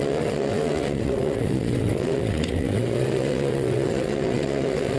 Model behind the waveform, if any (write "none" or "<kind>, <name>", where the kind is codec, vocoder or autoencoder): vocoder, WaveNeXt